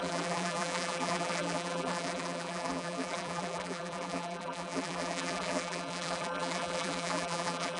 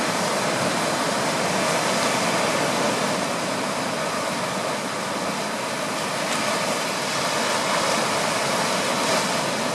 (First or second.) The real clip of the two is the second